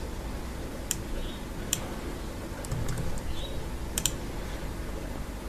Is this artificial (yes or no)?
no